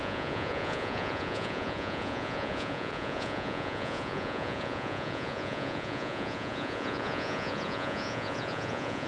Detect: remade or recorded remade